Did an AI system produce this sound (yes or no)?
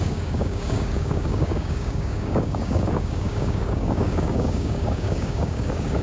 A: yes